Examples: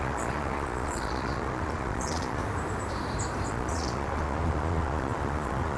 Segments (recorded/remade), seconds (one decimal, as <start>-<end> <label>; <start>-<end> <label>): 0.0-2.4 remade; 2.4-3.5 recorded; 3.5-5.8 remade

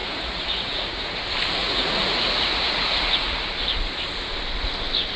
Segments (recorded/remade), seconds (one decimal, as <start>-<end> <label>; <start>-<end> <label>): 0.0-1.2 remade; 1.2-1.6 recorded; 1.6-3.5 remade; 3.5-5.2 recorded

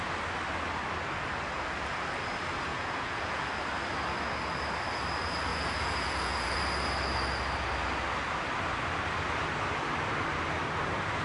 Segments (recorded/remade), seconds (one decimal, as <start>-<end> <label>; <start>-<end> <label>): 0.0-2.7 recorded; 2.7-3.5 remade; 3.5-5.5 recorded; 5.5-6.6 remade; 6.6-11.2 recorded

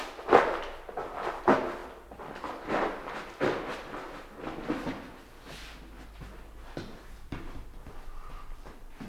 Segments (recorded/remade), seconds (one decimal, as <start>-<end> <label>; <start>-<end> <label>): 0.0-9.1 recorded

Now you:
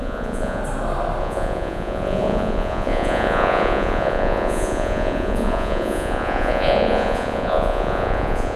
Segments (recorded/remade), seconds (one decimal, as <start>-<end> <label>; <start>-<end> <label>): 0.0-0.6 remade; 0.6-1.2 recorded; 1.2-8.6 remade

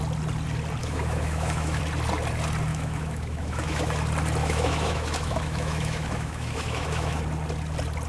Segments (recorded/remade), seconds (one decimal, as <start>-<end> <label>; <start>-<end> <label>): 0.0-0.8 recorded; 0.8-1.8 remade; 1.8-2.7 recorded; 2.7-4.0 remade; 4.0-4.4 recorded; 4.4-7.2 remade; 7.2-8.1 recorded

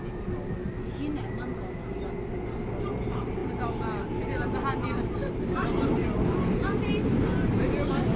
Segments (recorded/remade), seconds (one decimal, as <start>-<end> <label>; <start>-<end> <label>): 0.0-8.2 recorded